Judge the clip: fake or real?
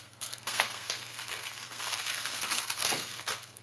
fake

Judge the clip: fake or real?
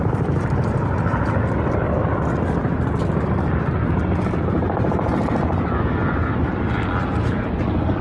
real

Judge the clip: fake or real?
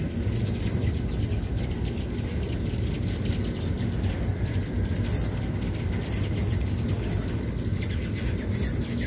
real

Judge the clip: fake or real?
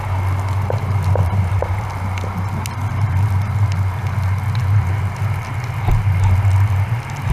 real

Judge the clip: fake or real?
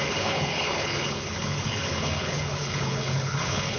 fake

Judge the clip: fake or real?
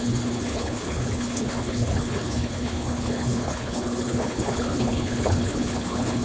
fake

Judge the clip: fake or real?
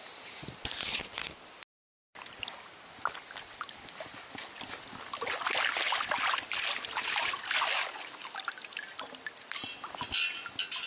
real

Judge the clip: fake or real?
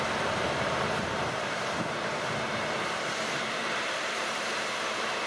fake